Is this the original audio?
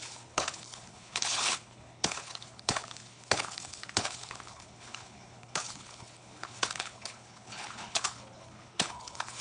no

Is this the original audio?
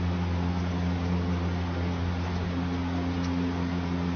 yes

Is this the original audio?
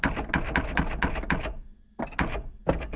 yes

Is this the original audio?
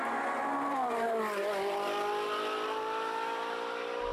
yes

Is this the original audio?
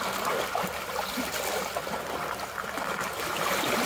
yes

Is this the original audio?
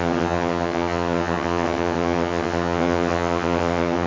no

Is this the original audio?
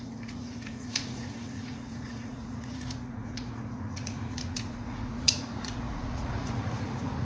no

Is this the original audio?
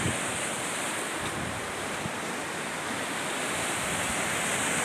yes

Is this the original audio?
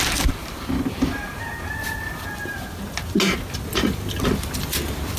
yes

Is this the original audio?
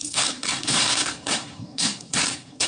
no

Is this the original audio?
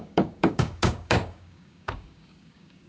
no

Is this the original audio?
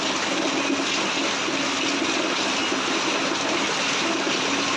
yes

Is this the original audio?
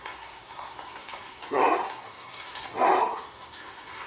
no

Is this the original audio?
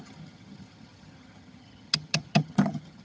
no